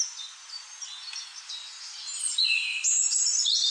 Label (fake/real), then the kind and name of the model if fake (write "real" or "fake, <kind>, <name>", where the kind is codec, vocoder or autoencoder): real